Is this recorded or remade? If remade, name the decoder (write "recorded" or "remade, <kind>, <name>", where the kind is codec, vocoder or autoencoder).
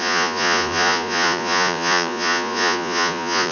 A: remade, vocoder, Vocos